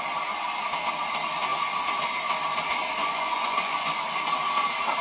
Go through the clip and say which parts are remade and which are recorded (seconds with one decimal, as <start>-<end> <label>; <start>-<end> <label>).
0.0-3.0 recorded; 3.0-4.0 remade; 4.0-5.0 recorded